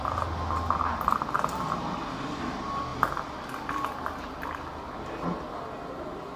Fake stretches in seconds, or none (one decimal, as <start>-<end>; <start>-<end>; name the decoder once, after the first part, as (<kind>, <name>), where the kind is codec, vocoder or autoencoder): none